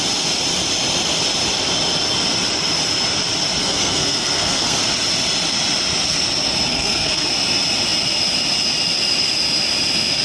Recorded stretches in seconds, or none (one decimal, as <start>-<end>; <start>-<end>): 0.0-3.6; 4.8-6.7; 7.3-10.2